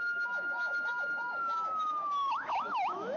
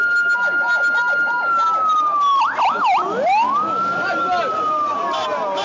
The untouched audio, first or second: second